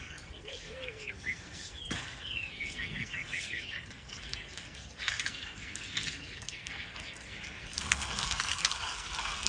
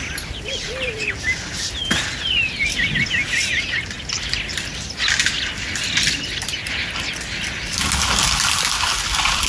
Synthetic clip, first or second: first